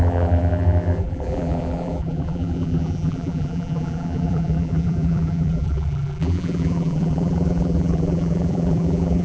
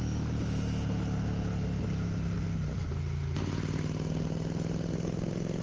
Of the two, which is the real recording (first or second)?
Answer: second